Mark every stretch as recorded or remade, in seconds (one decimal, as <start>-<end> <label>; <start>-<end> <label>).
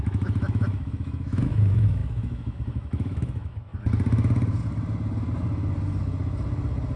0.0-3.7 remade; 3.7-7.0 recorded